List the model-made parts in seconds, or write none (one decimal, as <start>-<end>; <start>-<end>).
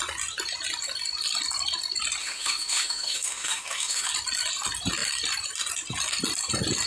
2.2-4.1